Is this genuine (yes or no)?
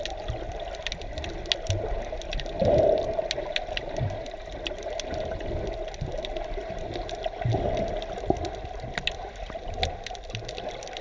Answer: yes